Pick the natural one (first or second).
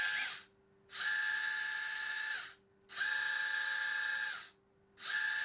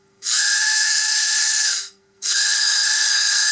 first